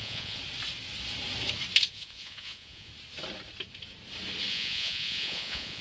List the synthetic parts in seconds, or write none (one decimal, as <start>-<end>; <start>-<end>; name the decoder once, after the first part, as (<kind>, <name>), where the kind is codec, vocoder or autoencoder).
0.0-0.4 (vocoder, Vocos); 1.9-2.9; 4.5-5.8

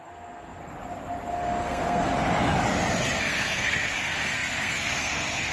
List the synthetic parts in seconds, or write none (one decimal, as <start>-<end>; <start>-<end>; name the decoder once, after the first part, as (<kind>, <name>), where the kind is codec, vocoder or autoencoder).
0.0-0.6 (codec, SNAC); 1.3-2.1; 3.2-5.5

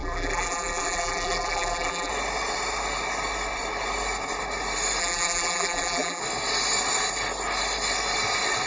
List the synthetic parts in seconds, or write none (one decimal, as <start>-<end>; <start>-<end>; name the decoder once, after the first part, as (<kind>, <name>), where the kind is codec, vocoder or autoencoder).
0.0-2.1 (vocoder, BigVGAN v2); 5.0-6.2

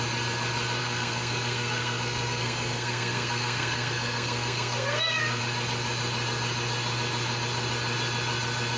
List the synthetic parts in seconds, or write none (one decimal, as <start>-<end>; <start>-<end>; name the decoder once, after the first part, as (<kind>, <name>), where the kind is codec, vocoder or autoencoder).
0.8-5.4 (codec, SNAC)

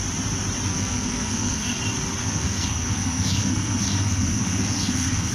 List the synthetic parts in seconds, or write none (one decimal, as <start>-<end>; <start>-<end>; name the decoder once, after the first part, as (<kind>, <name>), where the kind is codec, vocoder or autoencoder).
0.7-1.8 (codec, SNAC); 2.2-5.3

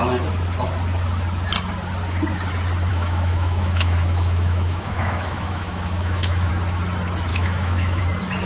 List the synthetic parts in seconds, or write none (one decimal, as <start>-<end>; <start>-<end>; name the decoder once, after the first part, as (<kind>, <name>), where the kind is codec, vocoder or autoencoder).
2.9-6.5 (autoencoder, DAC-VAE); 7.3-8.0